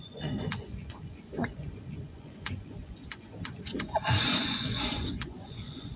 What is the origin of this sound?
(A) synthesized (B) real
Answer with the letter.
A